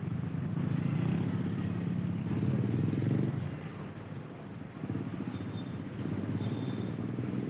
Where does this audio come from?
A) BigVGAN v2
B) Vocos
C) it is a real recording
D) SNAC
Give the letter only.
C